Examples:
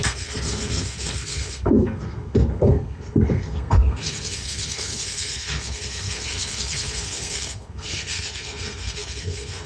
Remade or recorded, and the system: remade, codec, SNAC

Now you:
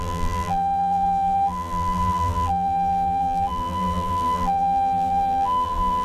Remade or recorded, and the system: remade, vocoder, BigVGAN v2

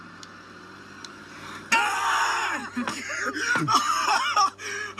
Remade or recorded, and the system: recorded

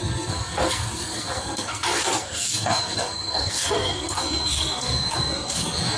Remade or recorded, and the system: remade, codec, SNAC